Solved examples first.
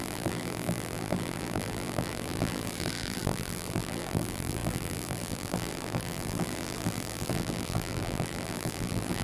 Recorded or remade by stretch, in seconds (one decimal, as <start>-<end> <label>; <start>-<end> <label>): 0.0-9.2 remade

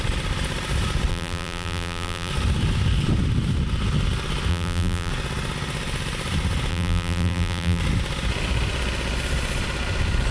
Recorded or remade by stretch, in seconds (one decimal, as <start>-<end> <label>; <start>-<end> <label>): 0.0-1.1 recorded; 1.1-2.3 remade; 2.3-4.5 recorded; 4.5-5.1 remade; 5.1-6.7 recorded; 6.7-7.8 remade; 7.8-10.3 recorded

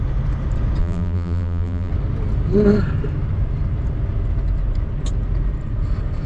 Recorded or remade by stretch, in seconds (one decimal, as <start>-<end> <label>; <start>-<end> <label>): 0.0-0.8 recorded; 0.8-1.9 remade; 1.9-6.3 recorded

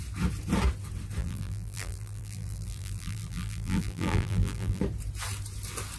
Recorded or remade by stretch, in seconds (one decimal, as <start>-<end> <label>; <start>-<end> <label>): 0.0-1.2 recorded; 1.2-4.8 remade; 4.8-6.0 recorded